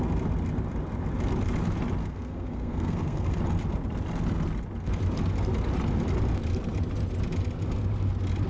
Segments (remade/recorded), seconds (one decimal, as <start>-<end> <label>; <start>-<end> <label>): 0.0-2.0 recorded; 2.0-3.4 remade; 3.4-8.5 recorded